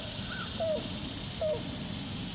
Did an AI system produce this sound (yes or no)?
no